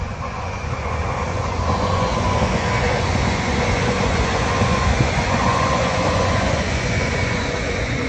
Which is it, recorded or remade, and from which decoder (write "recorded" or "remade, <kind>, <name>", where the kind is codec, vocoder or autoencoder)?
remade, vocoder, Vocos